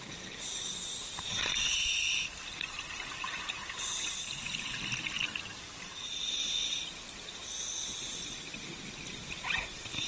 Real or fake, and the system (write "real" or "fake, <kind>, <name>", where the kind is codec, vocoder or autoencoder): real